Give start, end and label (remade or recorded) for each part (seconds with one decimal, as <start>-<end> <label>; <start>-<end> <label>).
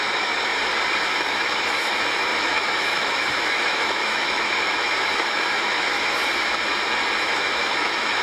0.0-0.5 remade; 0.5-1.0 recorded; 1.0-6.2 remade; 6.2-7.2 recorded; 7.2-8.2 remade